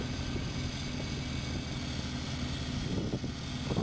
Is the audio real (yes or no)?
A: yes